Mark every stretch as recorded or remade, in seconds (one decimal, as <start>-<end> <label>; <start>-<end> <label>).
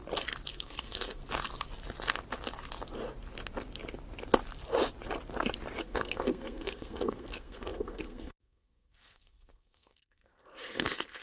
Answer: 0.0-0.5 recorded; 0.5-1.2 remade; 1.2-5.8 recorded; 5.8-11.2 remade